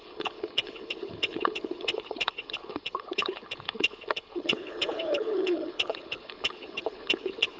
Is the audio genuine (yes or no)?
no